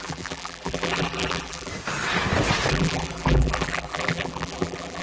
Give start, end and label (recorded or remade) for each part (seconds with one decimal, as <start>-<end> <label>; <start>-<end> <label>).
0.0-1.7 remade; 1.7-2.7 recorded; 2.7-5.0 remade